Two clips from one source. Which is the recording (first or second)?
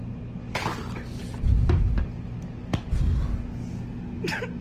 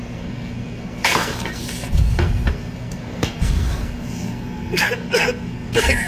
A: first